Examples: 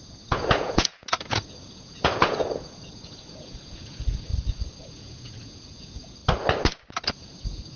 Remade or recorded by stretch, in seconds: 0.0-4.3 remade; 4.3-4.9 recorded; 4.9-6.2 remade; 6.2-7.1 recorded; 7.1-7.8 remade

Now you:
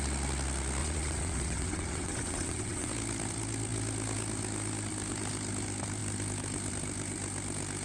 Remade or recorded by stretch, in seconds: 0.0-0.8 recorded; 0.8-2.9 remade; 2.9-7.8 recorded

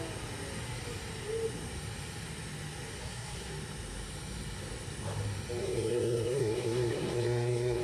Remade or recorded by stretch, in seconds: 0.0-3.0 recorded; 3.0-3.5 remade; 3.5-5.6 recorded; 5.6-7.8 remade